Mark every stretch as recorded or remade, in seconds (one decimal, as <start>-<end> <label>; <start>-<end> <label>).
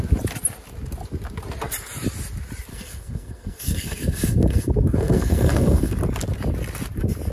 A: 0.0-2.7 recorded; 2.7-5.9 remade; 5.9-7.3 recorded